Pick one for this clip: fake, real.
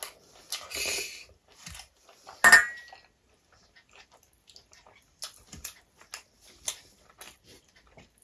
real